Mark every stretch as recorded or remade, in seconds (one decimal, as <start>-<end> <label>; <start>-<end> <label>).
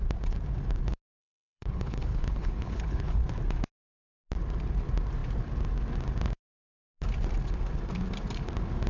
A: 0.0-1.2 recorded; 1.2-3.2 remade; 3.2-8.9 recorded